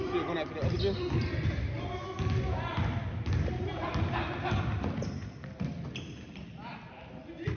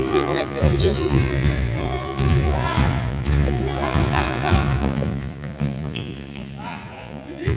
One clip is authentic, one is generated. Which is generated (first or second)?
second